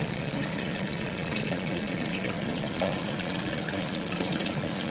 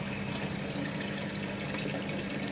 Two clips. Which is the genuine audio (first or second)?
second